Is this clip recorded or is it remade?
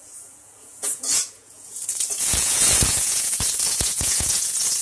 remade